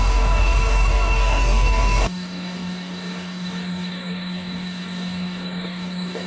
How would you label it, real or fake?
fake